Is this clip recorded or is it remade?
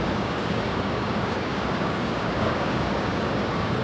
remade